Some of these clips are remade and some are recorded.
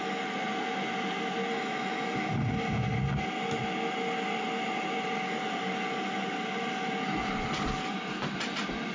recorded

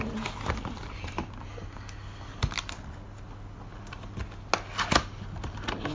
recorded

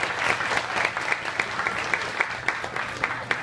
recorded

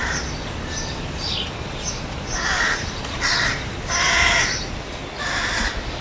recorded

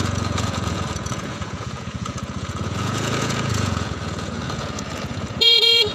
remade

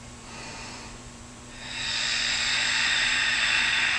remade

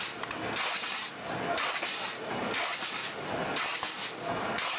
recorded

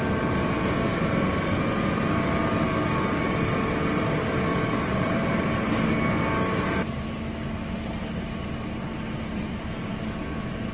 recorded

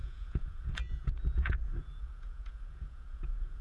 remade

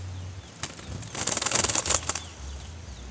recorded